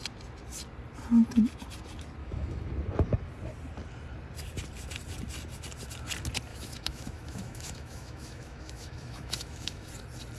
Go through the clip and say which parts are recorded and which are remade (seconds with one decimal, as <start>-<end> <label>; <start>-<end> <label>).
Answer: 0.0-2.2 recorded; 2.2-2.7 remade; 2.7-6.5 recorded; 6.5-9.9 remade; 9.9-10.4 recorded